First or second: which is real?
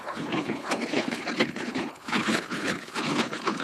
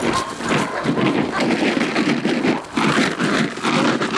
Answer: second